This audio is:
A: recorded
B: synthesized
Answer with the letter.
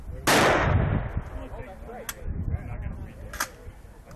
A